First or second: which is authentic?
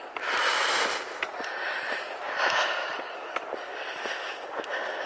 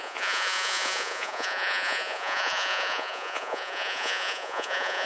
first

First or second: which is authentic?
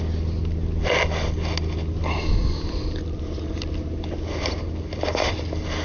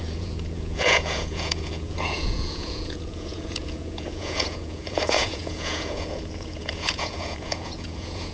first